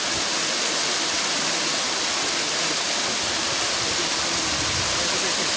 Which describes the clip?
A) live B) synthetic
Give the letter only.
A